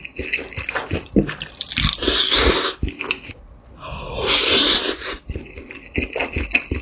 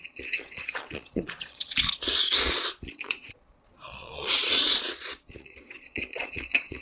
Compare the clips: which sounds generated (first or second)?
second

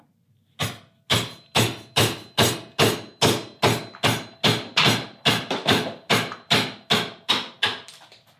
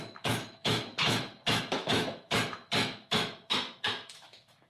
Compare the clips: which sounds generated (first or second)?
second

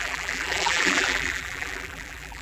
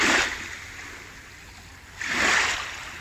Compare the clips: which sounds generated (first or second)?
first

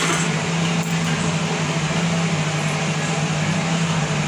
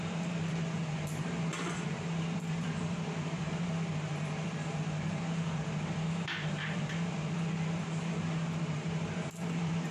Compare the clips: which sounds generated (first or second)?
second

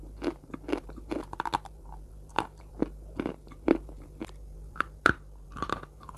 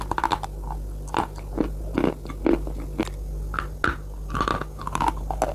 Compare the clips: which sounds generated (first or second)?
first